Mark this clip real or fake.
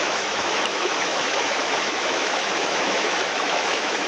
fake